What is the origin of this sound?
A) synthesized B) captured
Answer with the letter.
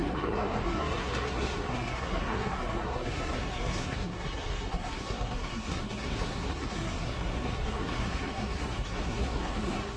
A